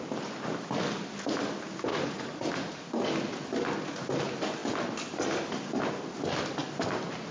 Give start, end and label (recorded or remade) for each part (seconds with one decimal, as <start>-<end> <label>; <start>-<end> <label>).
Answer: 0.0-1.9 recorded; 1.9-2.8 remade; 2.8-7.3 recorded